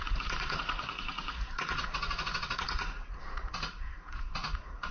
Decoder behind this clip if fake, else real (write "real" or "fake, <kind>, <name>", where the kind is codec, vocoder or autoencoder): fake, vocoder, Vocos